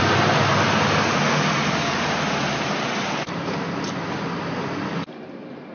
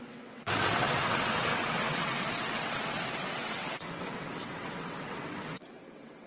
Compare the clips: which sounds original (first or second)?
first